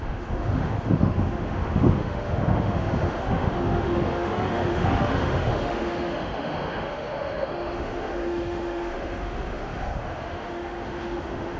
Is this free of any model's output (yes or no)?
no